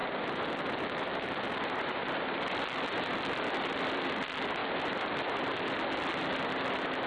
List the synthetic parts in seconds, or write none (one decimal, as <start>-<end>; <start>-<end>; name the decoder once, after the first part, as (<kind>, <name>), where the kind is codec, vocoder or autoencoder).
none